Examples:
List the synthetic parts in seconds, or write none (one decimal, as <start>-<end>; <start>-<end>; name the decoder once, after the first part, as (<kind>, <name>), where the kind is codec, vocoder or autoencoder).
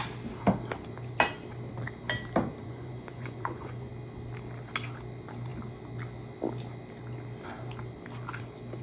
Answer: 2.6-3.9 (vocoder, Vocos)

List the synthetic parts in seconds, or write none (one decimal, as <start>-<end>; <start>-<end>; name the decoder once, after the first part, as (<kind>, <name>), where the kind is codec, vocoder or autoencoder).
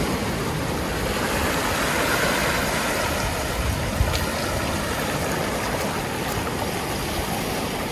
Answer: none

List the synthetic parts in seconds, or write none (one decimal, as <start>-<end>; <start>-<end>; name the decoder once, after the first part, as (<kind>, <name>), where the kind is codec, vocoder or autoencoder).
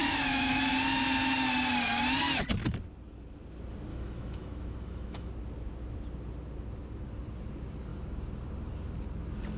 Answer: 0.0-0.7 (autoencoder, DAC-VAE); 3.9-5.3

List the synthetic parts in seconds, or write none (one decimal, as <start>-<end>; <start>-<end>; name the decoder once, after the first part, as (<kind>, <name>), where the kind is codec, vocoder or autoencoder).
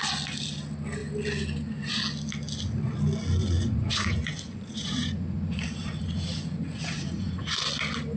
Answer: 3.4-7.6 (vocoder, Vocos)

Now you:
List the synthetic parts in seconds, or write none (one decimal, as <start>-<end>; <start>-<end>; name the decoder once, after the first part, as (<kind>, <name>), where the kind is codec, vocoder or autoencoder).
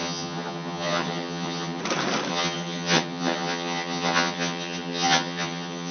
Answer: 0.0-1.8 (vocoder, HiFi-GAN); 2.3-5.9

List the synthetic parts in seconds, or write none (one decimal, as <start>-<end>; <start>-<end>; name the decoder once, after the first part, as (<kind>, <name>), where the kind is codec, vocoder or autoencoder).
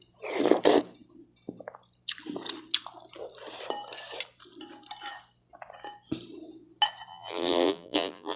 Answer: 7.1-8.4 (vocoder, BigVGAN v2)